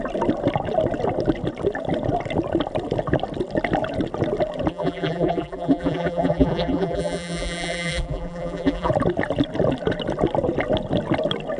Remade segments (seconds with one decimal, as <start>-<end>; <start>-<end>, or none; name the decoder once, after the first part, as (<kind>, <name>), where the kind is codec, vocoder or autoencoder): 4.7-8.9 (vocoder, BigVGAN v2)